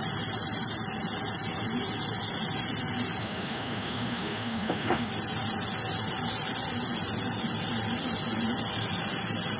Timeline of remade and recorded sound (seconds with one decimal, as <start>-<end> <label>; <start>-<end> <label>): 0.0-3.2 recorded; 3.2-5.1 remade; 5.1-9.6 recorded